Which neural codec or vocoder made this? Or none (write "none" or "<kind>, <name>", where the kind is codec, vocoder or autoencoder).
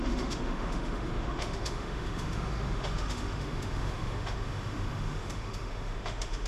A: autoencoder, DAC-VAE